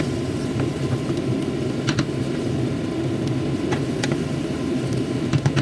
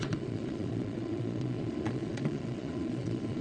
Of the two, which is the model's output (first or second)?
second